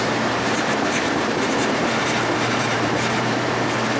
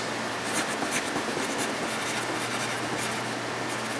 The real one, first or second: second